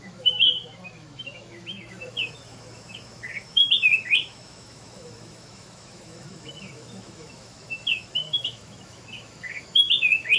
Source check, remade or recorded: remade